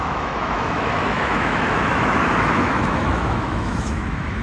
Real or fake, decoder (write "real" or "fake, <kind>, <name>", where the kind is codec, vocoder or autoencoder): fake, autoencoder, DAC-VAE